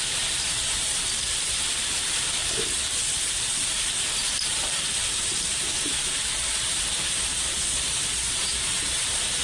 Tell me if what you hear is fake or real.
fake